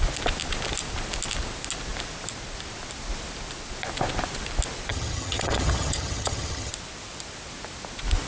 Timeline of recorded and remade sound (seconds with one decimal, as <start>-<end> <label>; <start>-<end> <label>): 0.0-4.9 recorded; 4.9-6.7 remade; 6.7-8.3 recorded